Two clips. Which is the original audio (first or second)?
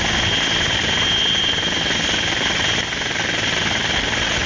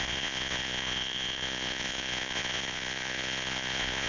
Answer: first